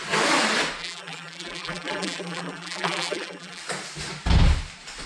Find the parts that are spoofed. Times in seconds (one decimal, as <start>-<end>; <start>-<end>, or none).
0.8-3.6